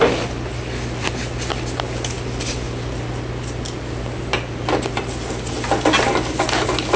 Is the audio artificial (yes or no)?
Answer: no